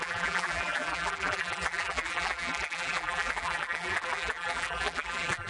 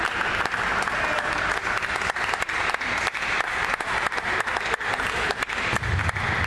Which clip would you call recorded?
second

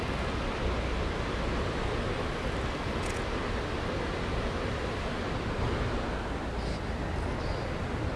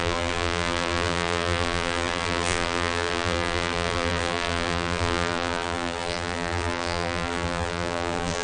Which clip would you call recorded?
first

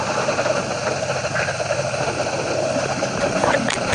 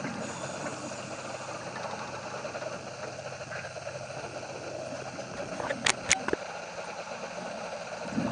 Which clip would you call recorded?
second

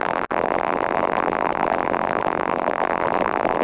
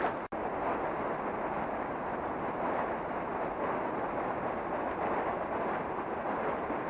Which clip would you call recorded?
second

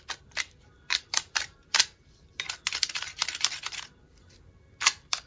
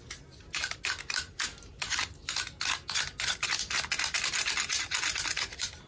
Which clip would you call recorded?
second